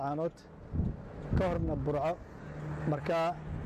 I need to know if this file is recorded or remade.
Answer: recorded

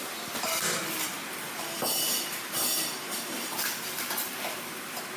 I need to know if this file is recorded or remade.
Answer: remade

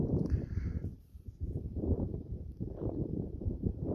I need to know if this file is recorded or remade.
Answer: remade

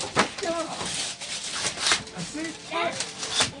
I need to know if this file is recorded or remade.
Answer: remade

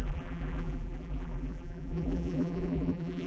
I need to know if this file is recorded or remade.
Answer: remade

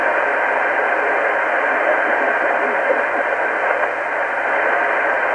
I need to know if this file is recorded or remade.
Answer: recorded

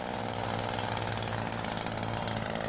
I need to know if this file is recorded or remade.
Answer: recorded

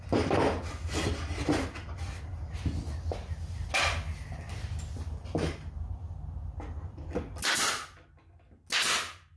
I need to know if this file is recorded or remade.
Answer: recorded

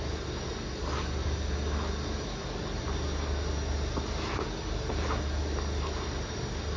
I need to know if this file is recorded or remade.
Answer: recorded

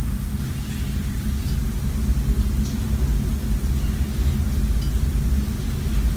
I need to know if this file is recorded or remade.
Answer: recorded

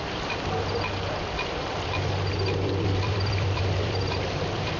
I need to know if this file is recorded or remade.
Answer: remade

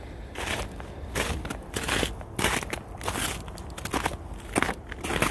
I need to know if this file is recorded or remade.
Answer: recorded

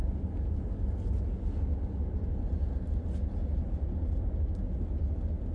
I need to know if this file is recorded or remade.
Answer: recorded